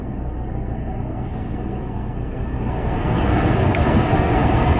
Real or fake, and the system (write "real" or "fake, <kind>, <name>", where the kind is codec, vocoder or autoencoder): fake, codec, SNAC